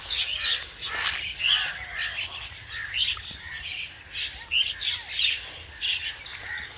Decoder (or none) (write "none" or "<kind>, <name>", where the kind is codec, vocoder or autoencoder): none